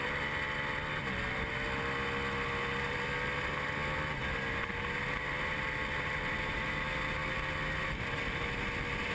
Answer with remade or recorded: recorded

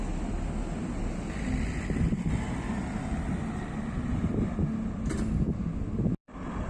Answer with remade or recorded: recorded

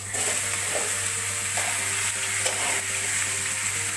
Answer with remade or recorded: recorded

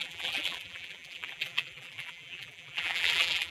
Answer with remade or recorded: remade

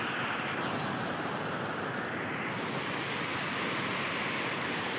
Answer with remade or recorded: recorded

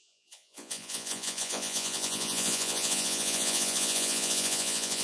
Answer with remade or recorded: remade